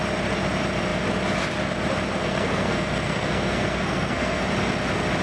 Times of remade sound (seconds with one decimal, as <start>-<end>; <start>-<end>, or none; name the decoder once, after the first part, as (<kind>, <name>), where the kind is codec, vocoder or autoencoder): 2.2-4.4 (codec, SNAC)

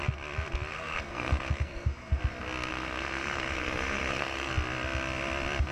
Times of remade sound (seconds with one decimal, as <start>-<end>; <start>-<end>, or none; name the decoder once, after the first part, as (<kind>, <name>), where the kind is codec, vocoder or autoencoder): 0.7-2.2 (codec, SNAC); 2.7-4.5